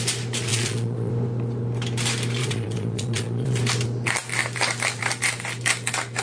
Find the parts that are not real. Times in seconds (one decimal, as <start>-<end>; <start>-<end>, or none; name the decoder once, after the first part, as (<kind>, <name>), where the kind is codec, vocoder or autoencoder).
0.5-1.1 (vocoder, Vocos); 2.4-3.6